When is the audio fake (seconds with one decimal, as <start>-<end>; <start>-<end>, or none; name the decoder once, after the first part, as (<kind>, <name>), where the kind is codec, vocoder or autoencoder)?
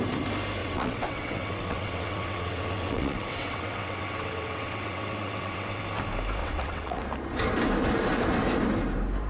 0.6-5.8 (vocoder, WaveNeXt); 6.4-7.0